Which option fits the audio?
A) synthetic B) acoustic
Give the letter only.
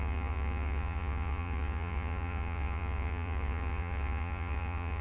A